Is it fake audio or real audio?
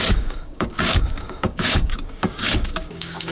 fake